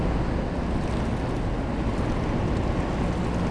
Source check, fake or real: real